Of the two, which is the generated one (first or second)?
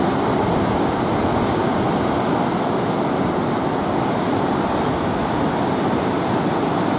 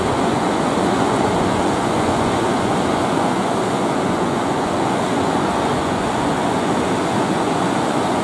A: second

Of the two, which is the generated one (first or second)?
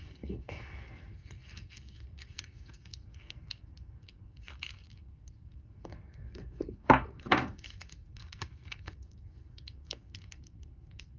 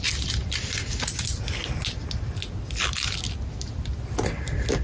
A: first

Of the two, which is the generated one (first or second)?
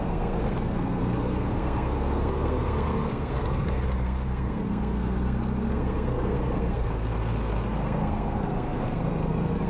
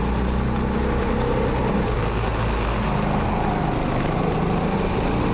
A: first